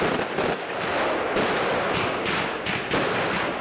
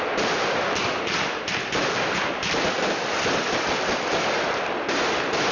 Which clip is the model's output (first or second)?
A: second